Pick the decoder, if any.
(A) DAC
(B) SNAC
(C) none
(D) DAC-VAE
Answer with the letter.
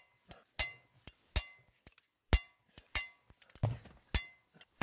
C